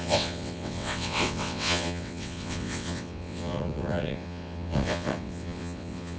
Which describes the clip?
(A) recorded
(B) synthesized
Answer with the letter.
B